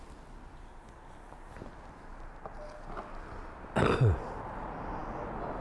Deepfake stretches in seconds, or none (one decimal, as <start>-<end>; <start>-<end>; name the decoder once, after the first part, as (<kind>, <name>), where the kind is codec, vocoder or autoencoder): none